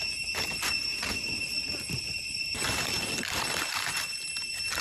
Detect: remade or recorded recorded